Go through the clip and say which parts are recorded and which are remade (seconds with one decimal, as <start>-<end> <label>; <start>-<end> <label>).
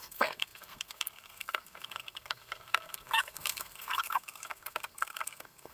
0.0-5.7 remade